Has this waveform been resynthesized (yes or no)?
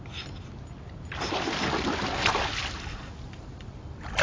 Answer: no